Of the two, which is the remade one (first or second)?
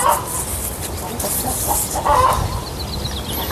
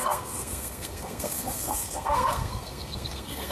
second